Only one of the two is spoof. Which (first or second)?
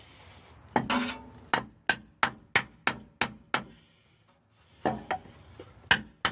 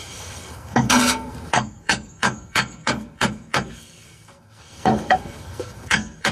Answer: second